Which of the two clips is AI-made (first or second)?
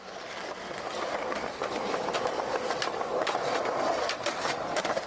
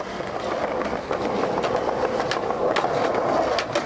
first